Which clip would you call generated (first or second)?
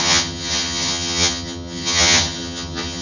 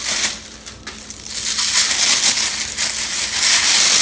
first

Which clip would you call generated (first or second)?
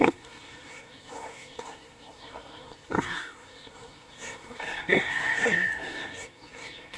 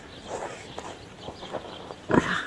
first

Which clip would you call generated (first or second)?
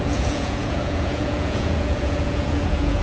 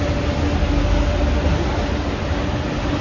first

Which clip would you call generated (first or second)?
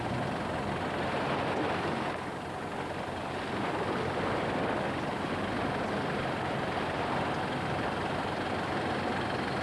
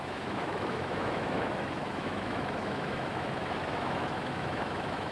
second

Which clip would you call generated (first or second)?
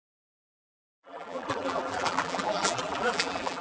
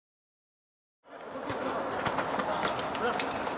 first